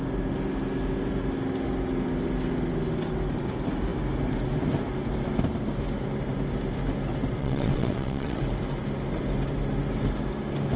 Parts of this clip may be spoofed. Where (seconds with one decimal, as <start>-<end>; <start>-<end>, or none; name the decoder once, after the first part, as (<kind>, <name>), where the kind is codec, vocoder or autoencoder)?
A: 7.4-8.4 (vocoder, WaveNeXt)